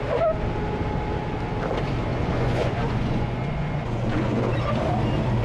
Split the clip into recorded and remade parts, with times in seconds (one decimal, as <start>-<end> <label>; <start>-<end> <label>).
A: 0.0-2.1 recorded; 2.1-4.5 remade; 4.5-5.4 recorded